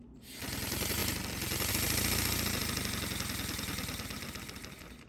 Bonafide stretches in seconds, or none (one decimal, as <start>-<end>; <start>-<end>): 0.0-5.1